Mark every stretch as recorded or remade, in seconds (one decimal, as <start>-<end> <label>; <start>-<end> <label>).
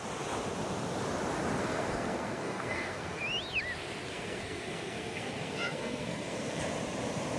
0.0-1.6 recorded; 1.6-3.2 remade; 3.2-4.1 recorded; 4.1-6.6 remade; 6.6-7.4 recorded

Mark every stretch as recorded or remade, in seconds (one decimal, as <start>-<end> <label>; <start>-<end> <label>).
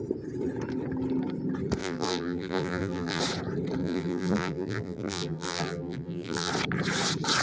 0.0-1.8 recorded; 1.8-3.2 remade; 3.2-3.8 recorded; 3.8-6.5 remade; 6.5-7.4 recorded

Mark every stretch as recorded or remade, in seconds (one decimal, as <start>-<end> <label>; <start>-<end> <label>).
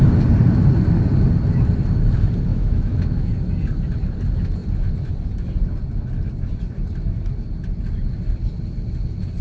0.0-2.5 recorded; 2.5-3.3 remade; 3.3-9.4 recorded